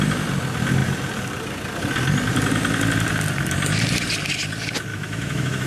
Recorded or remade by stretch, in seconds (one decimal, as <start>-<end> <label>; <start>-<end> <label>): 0.0-4.9 recorded; 4.9-5.7 remade